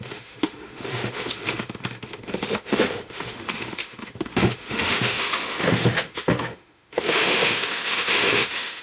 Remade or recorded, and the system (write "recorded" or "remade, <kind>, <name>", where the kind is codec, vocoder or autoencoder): remade, autoencoder, DAC-VAE